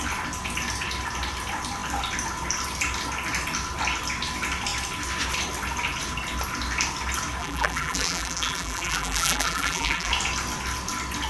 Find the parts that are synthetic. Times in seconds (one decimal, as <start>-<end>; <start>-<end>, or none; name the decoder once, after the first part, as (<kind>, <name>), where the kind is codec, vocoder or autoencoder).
7.4-10.1 (vocoder, BigVGAN v2)